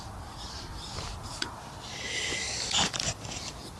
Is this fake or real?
real